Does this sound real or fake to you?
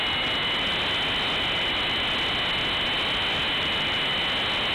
real